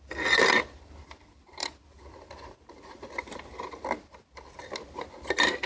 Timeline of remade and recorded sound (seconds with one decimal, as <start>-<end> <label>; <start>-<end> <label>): 0.0-5.7 recorded